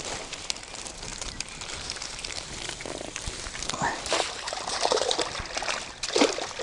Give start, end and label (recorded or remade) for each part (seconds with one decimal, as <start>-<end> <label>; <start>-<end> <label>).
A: 0.0-1.1 recorded; 1.1-5.1 remade; 5.1-6.6 recorded